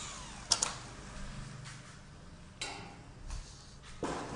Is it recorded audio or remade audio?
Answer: recorded